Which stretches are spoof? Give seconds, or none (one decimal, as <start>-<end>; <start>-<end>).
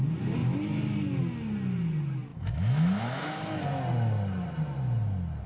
2.3-3.6